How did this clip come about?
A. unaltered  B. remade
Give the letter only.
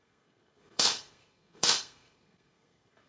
B